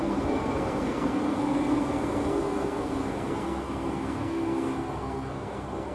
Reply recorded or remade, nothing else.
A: remade